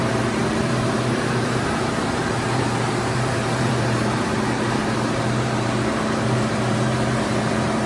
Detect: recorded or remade remade